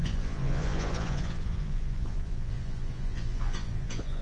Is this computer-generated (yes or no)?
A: yes